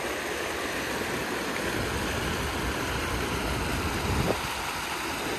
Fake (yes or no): no